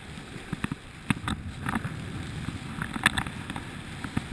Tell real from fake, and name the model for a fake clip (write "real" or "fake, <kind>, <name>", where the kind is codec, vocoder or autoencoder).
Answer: real